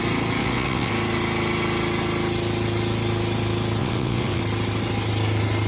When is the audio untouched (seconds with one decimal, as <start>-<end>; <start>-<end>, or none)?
0.0-0.4; 0.9-3.8; 4.4-5.7